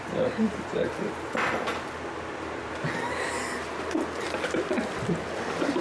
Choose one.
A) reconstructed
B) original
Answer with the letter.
A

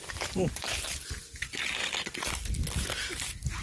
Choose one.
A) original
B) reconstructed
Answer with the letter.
A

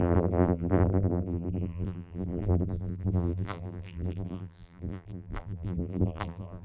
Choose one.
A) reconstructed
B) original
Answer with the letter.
A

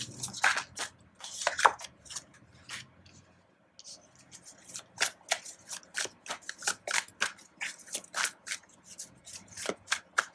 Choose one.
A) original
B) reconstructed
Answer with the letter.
A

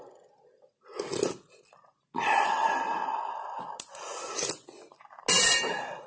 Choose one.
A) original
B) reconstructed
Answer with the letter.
A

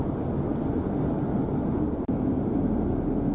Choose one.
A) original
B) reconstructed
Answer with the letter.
A